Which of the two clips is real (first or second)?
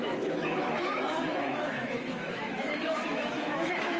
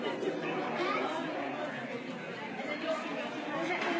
second